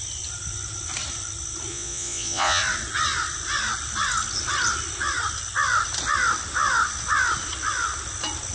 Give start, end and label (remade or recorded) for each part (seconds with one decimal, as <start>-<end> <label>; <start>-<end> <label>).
0.0-1.7 recorded; 1.7-2.6 remade; 2.6-8.5 recorded